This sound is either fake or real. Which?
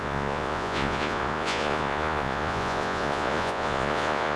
fake